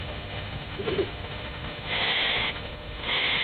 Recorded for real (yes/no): no